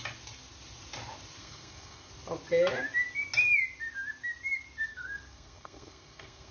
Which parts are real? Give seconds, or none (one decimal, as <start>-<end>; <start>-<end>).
0.0-1.4; 2.1-4.9